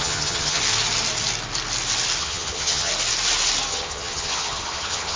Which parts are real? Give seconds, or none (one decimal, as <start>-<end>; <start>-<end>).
0.6-2.2; 2.9-3.7